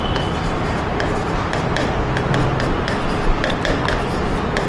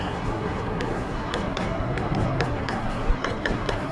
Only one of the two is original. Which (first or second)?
first